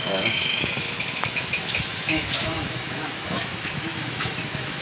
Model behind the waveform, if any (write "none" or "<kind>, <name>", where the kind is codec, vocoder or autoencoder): autoencoder, DAC-VAE